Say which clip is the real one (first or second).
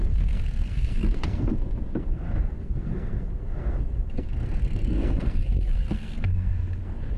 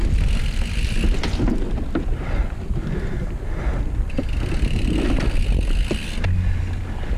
second